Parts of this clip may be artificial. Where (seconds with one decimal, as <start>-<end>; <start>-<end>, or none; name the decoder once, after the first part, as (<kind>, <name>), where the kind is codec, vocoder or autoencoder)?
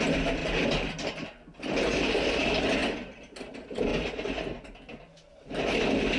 none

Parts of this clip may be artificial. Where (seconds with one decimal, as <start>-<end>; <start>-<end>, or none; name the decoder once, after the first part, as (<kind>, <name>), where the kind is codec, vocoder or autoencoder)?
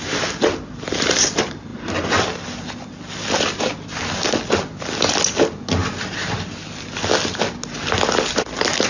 none